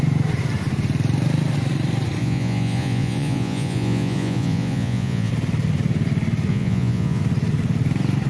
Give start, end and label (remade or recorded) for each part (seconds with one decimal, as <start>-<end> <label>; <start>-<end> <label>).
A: 0.0-2.2 recorded; 2.2-5.3 remade; 5.3-6.5 recorded; 6.5-7.2 remade; 7.2-8.3 recorded